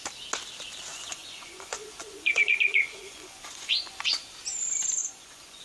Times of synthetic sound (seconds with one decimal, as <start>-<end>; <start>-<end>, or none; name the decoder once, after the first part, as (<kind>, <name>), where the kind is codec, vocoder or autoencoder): 0.9-4.3 (vocoder, Vocos); 5.0-5.6

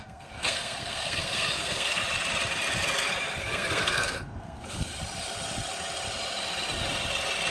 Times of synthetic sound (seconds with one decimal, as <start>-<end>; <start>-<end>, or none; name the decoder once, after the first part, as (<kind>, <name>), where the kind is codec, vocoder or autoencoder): 0.0-2.0 (codec, SNAC); 3.4-4.9

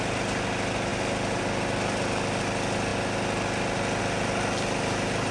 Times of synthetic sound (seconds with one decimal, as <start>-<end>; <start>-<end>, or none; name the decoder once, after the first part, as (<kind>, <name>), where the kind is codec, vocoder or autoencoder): none